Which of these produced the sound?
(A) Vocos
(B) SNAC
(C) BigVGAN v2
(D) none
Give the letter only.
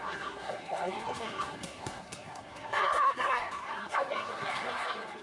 B